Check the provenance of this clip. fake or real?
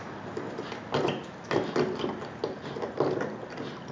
real